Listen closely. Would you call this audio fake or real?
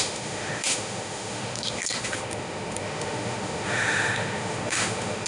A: fake